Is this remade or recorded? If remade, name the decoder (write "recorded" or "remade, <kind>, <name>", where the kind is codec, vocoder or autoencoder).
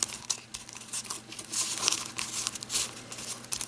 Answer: recorded